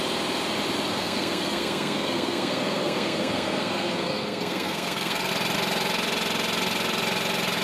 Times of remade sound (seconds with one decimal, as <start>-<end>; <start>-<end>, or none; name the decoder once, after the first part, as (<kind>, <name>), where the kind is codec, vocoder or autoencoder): 0.9-5.3 (codec, SNAC)